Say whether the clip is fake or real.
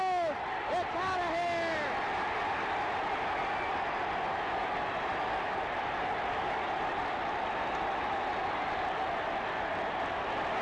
real